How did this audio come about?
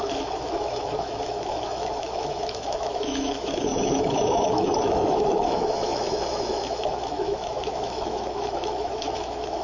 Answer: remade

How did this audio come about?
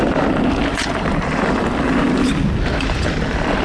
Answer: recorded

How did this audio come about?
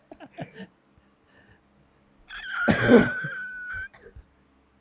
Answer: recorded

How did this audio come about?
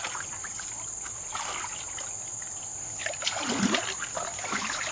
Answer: recorded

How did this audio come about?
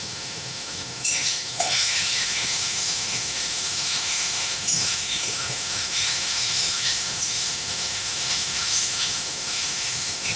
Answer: remade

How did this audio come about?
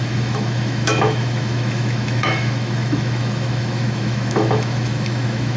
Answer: remade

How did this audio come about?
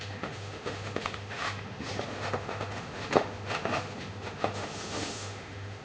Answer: remade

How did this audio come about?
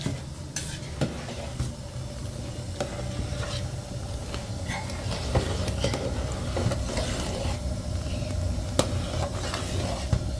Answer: recorded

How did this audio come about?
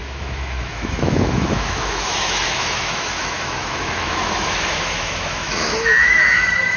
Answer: remade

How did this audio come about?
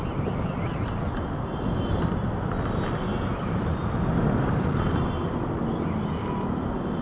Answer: recorded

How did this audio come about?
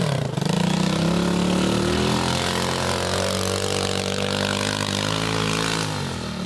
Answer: recorded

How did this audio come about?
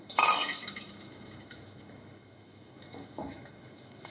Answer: remade